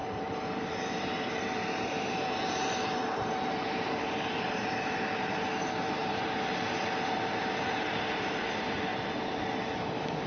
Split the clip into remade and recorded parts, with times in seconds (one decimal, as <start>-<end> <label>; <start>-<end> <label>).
0.0-8.9 remade; 8.9-9.9 recorded; 9.9-10.3 remade